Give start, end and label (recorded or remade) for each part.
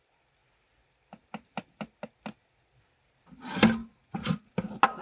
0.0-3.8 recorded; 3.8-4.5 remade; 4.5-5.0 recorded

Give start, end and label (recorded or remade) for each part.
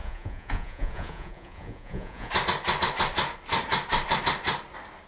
0.0-2.3 remade; 2.3-5.1 recorded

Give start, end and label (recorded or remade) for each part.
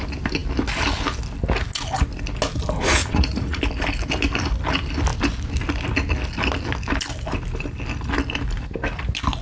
0.0-3.0 recorded; 3.0-3.6 remade; 3.6-9.4 recorded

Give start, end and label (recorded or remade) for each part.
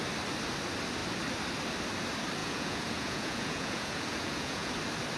0.0-2.4 recorded; 2.4-4.7 remade; 4.7-5.2 recorded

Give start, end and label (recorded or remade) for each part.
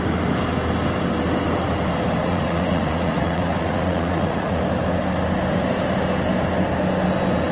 0.0-2.2 recorded; 2.2-4.6 remade; 4.6-7.5 recorded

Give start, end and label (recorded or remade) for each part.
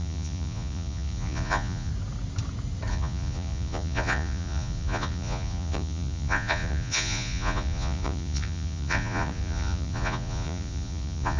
0.0-1.9 remade; 1.9-2.9 recorded; 2.9-11.4 remade